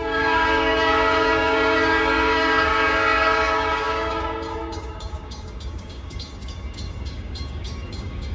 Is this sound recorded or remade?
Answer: remade